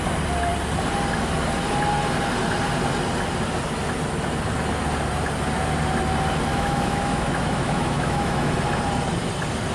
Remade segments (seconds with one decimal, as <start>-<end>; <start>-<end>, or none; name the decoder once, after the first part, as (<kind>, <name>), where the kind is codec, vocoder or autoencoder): 6.5-8.5 (autoencoder, DAC-VAE)